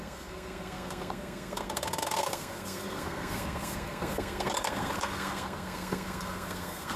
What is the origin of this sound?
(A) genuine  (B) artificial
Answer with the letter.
B